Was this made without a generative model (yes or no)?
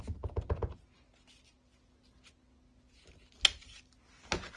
yes